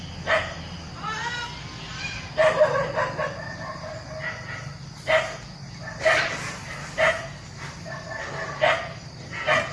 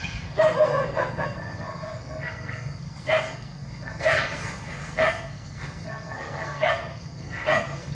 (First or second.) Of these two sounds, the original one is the first